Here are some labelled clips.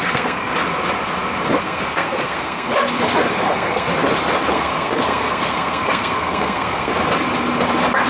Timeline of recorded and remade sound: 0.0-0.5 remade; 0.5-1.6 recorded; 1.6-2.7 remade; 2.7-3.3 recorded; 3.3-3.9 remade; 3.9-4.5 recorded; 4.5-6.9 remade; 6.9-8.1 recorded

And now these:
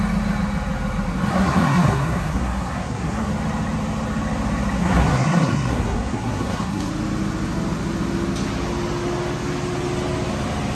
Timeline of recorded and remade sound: 0.0-1.3 recorded; 1.3-3.3 remade; 3.3-4.8 recorded; 4.8-6.9 remade; 6.9-10.7 recorded

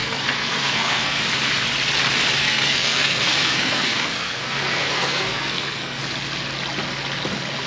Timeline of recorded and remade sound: 0.0-1.2 remade; 1.2-2.4 recorded; 2.4-6.0 remade; 6.0-7.7 recorded